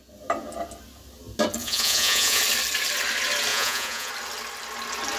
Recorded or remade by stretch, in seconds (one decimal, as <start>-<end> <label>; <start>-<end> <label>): 0.0-1.6 recorded; 1.6-2.4 remade; 2.4-3.5 recorded; 3.5-4.1 remade; 4.1-5.2 recorded